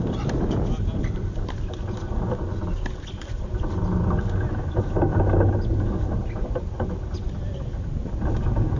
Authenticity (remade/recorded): recorded